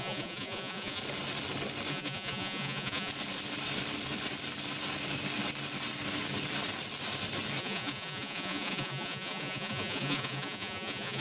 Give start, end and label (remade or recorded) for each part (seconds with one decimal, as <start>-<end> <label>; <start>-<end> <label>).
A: 0.0-1.0 remade; 1.0-1.9 recorded; 1.9-3.1 remade; 3.1-7.6 recorded; 7.6-11.2 remade